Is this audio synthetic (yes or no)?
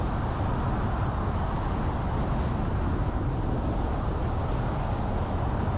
no